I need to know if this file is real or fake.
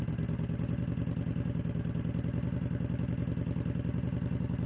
real